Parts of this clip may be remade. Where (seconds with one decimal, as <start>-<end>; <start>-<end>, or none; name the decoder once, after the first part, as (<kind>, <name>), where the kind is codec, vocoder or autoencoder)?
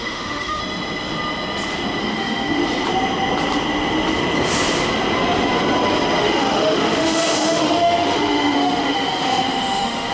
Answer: 0.0-0.6 (autoencoder, DAC-VAE); 2.0-2.6; 6.2-10.1